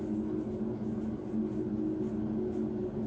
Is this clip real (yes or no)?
yes